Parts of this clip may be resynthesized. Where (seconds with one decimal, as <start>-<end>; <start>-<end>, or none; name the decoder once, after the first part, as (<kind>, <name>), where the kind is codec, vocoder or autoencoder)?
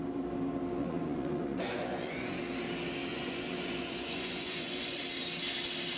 0.8-2.4 (vocoder, Vocos); 3.1-5.0